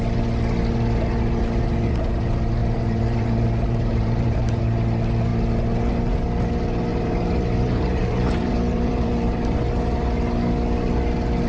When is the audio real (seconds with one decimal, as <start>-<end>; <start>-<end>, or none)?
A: 0.0-2.6; 4.6-6.9; 9.6-11.5